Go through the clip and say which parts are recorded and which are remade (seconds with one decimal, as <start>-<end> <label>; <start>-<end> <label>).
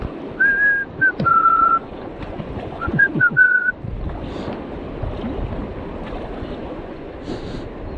0.0-1.3 recorded; 1.3-3.7 remade; 3.7-6.6 recorded; 6.6-7.1 remade; 7.1-8.0 recorded